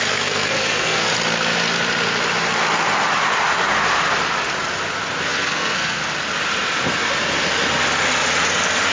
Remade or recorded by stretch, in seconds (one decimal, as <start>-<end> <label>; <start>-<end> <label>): 0.0-1.1 remade; 1.1-5.2 recorded; 5.2-6.0 remade; 6.0-8.9 recorded